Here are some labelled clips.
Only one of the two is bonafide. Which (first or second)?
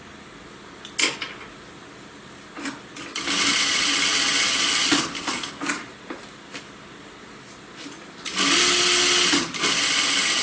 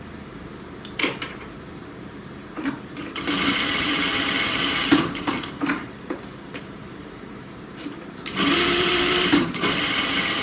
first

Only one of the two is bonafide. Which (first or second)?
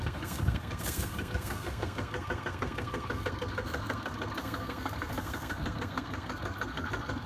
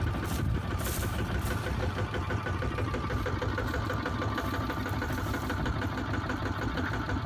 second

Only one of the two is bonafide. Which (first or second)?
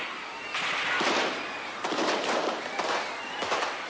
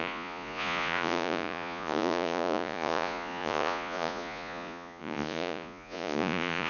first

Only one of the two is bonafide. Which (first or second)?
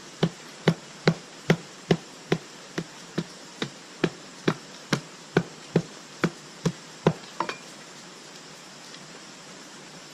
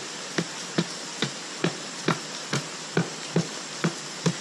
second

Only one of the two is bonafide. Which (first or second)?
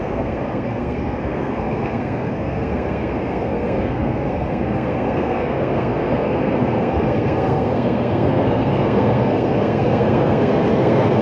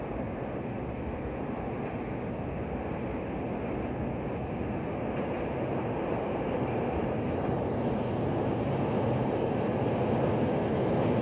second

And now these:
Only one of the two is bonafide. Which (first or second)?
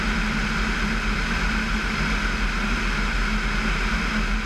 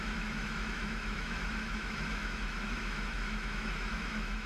first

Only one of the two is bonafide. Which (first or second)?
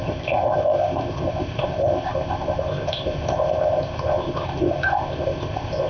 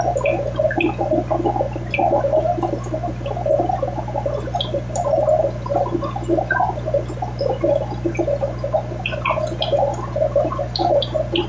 second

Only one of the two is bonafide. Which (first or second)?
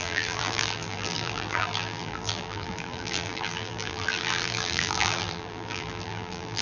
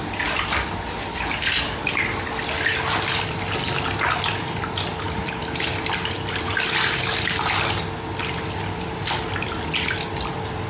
second